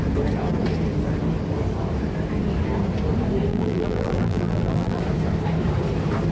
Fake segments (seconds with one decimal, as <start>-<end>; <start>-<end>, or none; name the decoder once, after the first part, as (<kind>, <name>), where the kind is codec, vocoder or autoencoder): 3.5-5.0 (vocoder, BigVGAN v2)

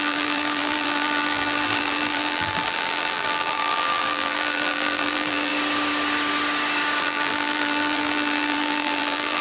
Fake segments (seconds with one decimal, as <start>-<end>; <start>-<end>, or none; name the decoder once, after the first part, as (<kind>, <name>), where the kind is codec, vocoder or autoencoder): 0.0-5.5 (vocoder, BigVGAN v2); 7.0-9.4

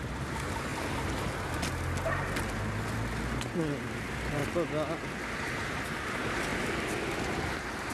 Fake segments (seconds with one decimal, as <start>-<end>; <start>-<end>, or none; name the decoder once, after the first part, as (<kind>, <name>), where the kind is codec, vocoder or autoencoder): 0.0-0.7 (vocoder, BigVGAN v2); 3.6-4.4; 5.5-6.5